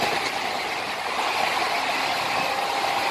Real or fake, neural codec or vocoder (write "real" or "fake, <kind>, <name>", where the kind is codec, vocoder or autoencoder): real